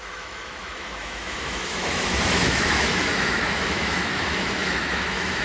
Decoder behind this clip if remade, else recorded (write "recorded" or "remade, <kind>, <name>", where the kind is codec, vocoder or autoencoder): remade, autoencoder, DAC-VAE